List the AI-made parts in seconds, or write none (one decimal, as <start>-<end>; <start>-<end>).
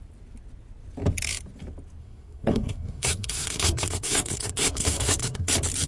2.0-5.5